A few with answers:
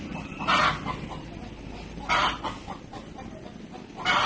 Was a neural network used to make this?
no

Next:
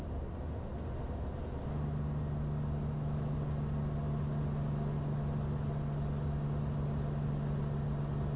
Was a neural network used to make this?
no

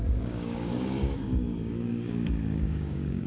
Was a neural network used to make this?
yes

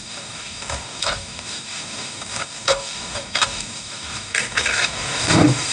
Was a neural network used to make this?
yes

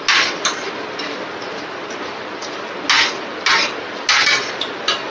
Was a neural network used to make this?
no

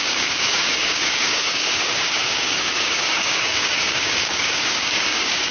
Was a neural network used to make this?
yes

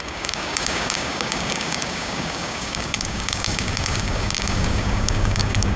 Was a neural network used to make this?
yes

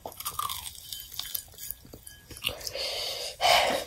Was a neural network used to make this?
no